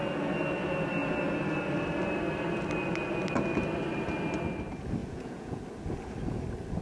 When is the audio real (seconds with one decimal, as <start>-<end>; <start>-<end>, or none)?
0.0-5.0; 5.6-6.8